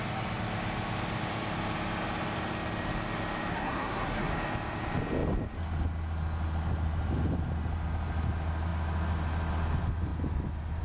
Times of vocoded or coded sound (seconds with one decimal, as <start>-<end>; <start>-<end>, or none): 3.5-4.3